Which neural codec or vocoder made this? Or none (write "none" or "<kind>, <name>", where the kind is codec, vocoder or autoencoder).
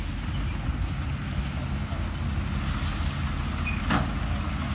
none